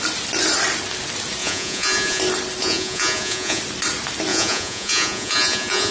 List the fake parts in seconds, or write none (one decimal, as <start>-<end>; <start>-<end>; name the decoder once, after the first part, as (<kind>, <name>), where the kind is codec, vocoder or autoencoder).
1.4-2.2 (vocoder, Vocos); 2.6-3.6; 4.3-5.9